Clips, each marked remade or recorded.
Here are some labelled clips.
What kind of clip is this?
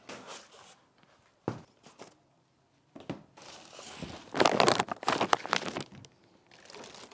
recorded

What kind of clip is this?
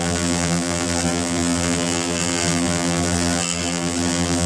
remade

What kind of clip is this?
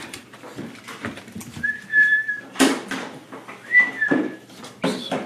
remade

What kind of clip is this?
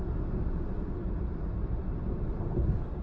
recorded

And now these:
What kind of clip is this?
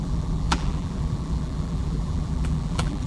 remade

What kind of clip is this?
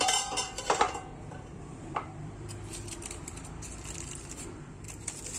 remade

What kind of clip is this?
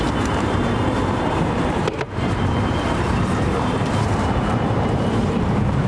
remade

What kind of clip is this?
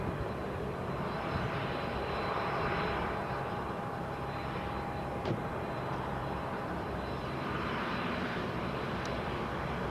remade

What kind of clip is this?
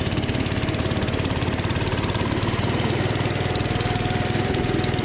remade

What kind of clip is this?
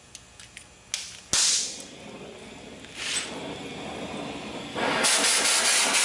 recorded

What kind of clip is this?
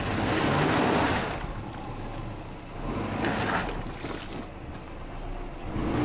recorded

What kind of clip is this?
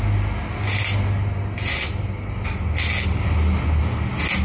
recorded